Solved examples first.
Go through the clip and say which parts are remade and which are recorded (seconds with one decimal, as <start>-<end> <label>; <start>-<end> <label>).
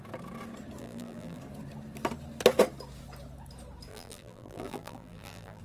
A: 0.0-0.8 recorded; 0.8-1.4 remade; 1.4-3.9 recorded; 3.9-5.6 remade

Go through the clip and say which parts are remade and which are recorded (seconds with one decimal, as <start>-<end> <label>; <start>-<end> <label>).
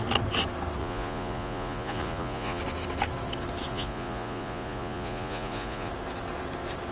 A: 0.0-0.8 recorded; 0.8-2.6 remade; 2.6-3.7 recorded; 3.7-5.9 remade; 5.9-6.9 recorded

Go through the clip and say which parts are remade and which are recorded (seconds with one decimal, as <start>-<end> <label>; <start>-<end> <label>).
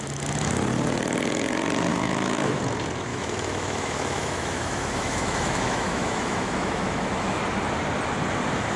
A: 0.0-1.9 recorded; 1.9-2.6 remade; 2.6-3.1 recorded; 3.1-7.4 remade; 7.4-8.8 recorded